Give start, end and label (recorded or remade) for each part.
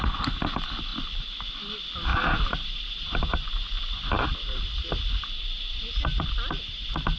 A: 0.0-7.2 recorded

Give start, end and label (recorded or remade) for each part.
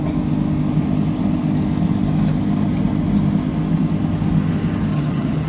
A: 0.0-4.9 recorded; 4.9-5.5 remade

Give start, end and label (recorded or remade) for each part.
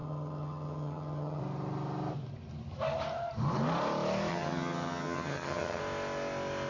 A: 0.0-1.4 remade; 1.4-4.3 recorded; 4.3-5.8 remade; 5.8-6.7 recorded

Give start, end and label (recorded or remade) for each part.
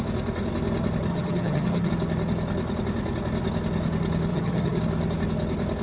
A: 0.0-1.1 recorded; 1.1-1.9 remade; 1.9-4.3 recorded; 4.3-4.8 remade; 4.8-5.8 recorded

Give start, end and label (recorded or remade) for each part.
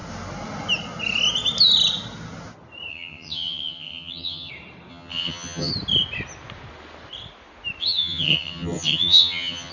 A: 0.0-2.9 recorded; 2.9-4.5 remade; 4.5-4.9 recorded; 4.9-5.7 remade; 5.7-7.8 recorded; 7.8-9.7 remade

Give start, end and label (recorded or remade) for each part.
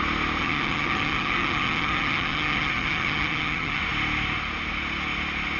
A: 0.0-0.4 recorded; 0.4-3.8 remade; 3.8-5.6 recorded